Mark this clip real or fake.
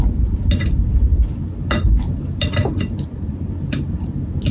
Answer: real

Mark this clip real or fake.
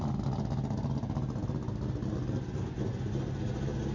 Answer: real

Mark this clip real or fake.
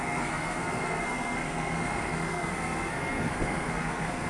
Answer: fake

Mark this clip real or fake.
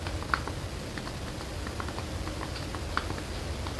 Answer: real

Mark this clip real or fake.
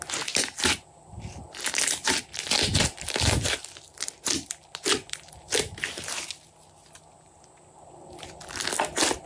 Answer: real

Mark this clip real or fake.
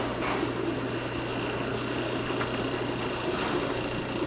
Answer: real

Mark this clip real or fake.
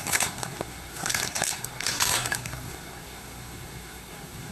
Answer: fake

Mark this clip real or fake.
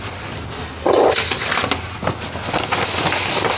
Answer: real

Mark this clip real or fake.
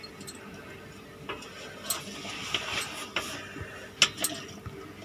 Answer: real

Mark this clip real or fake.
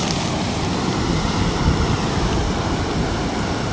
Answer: fake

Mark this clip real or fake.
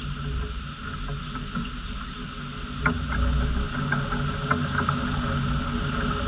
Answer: real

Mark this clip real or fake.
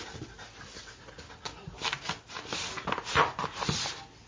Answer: real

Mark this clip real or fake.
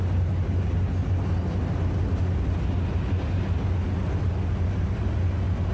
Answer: real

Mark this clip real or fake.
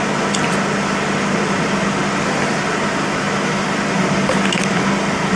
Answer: real